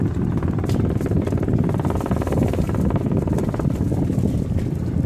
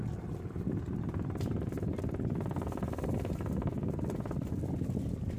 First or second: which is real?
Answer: second